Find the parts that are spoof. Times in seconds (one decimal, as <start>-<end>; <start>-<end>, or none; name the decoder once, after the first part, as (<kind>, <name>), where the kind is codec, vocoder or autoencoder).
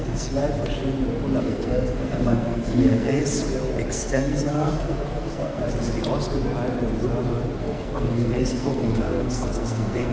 0.0-0.4 (codec, SNAC); 1.4-3.2; 3.9-5.6; 7.6-10.1